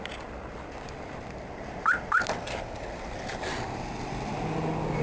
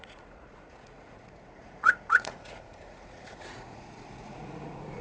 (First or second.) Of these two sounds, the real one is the first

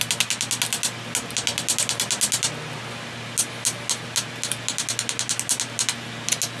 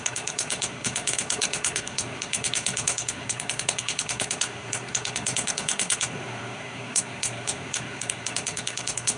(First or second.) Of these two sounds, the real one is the first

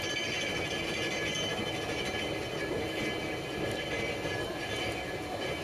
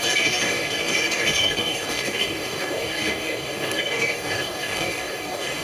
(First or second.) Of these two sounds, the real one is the first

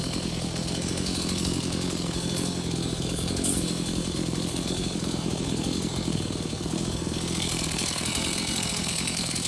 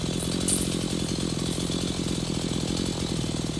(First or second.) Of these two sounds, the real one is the second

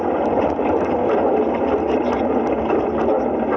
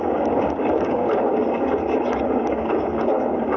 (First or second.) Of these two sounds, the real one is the first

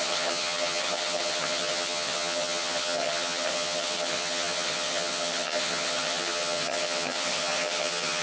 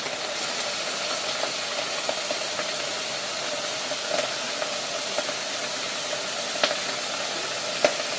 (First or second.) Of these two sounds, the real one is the second